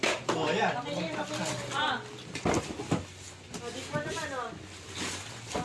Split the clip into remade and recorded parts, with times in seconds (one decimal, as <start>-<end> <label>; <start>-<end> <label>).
0.0-5.6 recorded